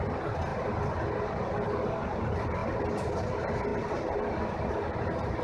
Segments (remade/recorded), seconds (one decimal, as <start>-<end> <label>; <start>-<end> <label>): 0.0-5.4 recorded